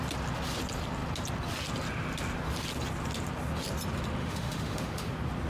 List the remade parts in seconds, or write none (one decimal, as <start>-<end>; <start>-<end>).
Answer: 4.2-5.1